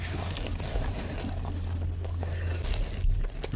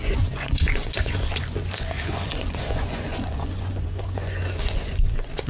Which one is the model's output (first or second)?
second